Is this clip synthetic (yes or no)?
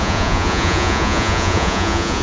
yes